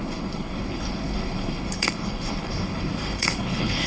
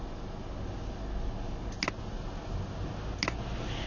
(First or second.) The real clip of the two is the second